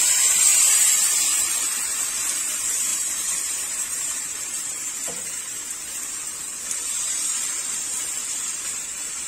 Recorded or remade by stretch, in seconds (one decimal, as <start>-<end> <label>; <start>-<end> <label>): 0.0-2.9 recorded; 2.9-5.4 remade; 5.4-6.8 recorded; 6.8-7.3 remade; 7.3-9.3 recorded